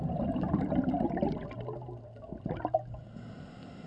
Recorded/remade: recorded